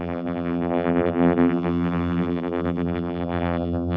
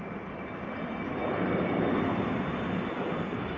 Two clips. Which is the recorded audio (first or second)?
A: second